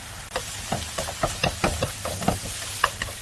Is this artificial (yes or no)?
no